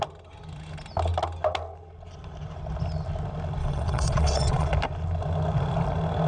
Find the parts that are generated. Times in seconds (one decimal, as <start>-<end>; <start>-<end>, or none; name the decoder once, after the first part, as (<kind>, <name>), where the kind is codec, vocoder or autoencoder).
3.6-4.7 (vocoder, WaveNeXt)